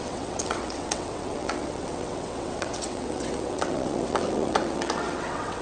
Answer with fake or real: fake